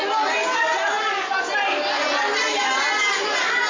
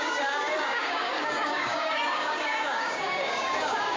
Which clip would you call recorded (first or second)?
first